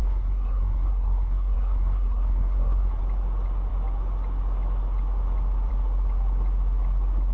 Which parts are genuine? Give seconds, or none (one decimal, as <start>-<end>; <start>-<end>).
3.0-7.3